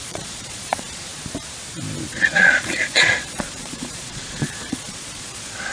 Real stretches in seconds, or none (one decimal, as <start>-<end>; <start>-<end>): 1.1-2.1